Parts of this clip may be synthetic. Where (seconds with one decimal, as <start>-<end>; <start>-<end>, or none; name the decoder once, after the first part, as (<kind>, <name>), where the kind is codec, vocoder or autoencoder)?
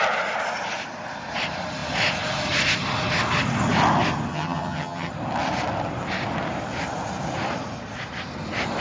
4.3-5.1 (vocoder, HiFi-GAN)